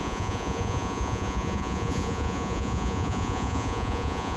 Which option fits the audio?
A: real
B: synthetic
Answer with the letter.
B